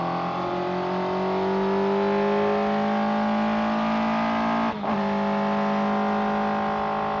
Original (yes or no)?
yes